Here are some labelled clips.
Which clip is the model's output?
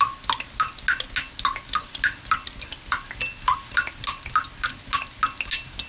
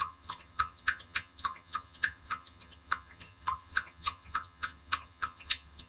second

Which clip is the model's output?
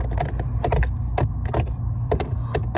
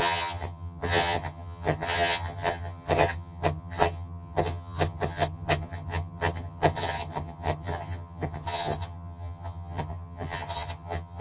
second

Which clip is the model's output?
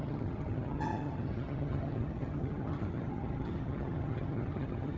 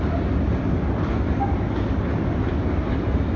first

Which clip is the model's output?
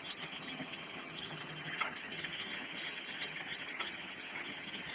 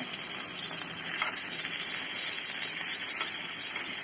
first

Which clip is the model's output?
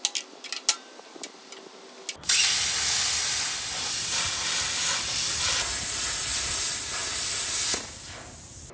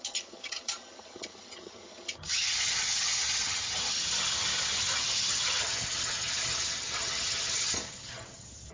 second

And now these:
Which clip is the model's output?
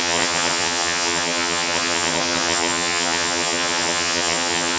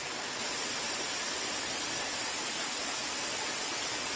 first